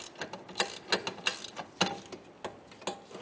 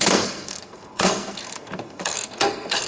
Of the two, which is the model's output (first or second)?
second